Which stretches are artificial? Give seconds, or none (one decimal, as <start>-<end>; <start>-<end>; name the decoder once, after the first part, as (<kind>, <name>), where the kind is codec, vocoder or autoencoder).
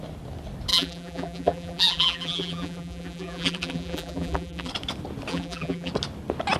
0.7-4.7 (vocoder, BigVGAN v2); 5.3-5.9